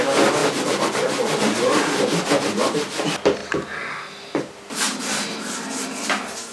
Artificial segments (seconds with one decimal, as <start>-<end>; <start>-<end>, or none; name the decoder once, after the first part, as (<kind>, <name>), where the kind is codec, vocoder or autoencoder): 0.4-2.3 (vocoder, BigVGAN v2)